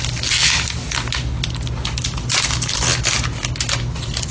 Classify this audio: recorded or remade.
recorded